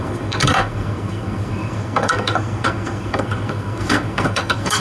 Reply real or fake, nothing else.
fake